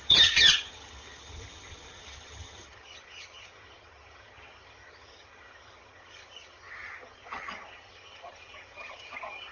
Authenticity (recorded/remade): remade